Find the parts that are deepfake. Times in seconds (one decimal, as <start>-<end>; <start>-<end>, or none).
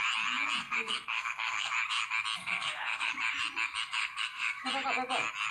0.6-1.7; 2.4-3.1; 4.0-4.7